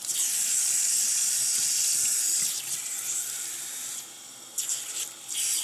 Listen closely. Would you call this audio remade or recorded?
recorded